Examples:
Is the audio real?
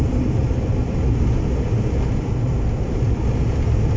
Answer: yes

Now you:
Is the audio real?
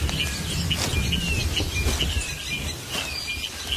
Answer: yes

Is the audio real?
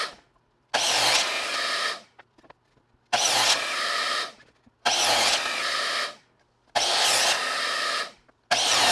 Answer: yes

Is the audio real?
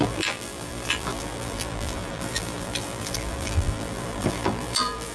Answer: no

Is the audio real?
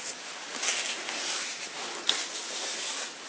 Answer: yes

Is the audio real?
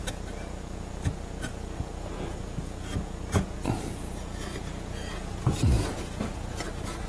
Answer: no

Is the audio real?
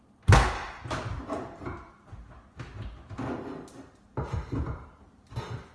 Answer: yes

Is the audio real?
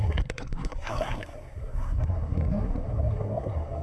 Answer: no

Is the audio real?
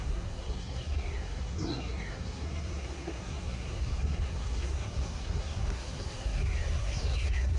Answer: no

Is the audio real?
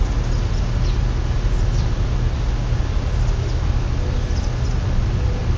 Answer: yes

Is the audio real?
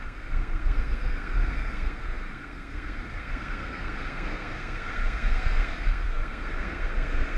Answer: no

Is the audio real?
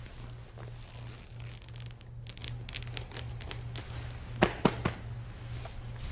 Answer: yes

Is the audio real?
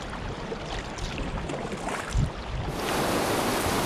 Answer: no